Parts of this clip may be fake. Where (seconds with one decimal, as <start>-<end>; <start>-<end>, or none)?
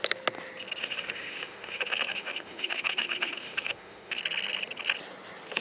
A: 0.8-4.2